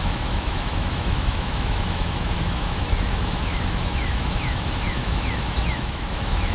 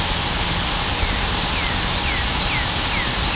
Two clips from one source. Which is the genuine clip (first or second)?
second